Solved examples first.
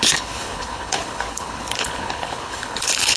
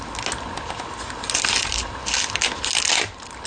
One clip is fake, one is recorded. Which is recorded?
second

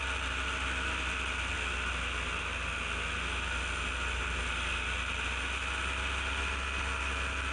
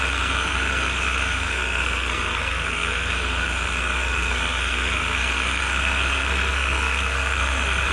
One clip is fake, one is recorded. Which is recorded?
first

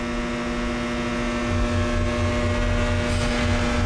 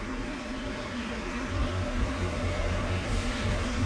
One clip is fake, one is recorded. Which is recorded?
first